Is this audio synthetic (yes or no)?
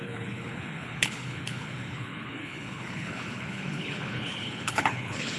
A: yes